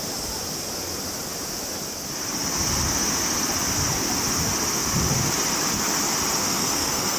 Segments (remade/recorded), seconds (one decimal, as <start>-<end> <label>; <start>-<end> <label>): 0.0-6.4 recorded; 6.4-7.2 remade